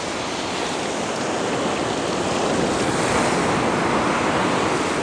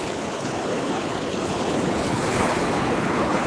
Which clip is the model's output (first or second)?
second